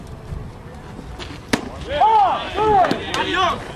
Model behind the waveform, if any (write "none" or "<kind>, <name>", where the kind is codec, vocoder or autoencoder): none